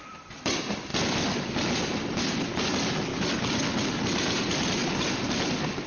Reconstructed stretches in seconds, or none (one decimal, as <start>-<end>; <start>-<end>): 0.9-1.4